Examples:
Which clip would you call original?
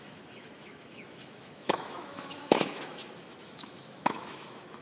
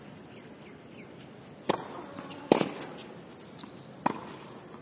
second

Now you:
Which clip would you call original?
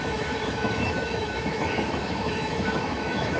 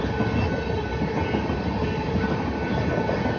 second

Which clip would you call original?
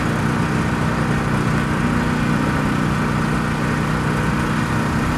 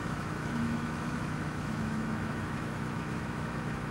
first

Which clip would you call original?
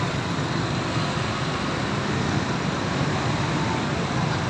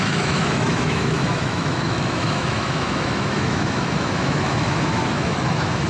first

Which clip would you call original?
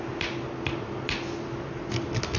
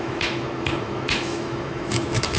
first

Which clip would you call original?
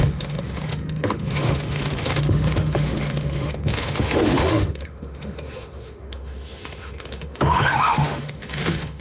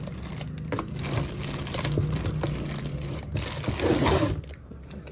second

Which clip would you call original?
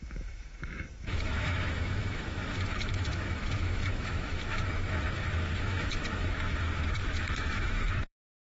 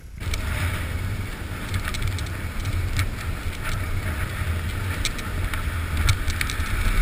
second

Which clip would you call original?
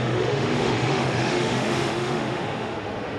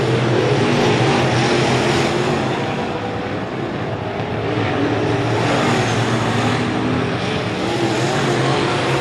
second